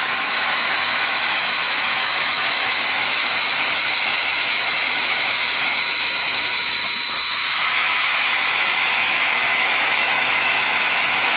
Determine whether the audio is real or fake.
fake